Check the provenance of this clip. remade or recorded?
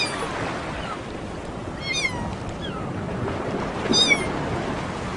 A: recorded